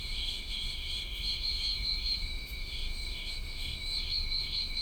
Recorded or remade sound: remade